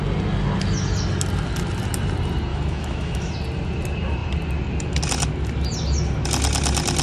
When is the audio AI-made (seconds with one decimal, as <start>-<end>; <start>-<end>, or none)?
2.5-3.3